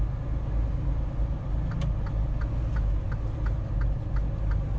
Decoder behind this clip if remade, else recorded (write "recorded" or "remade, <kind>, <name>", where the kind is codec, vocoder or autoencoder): recorded